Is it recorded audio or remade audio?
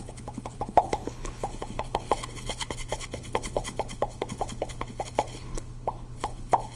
remade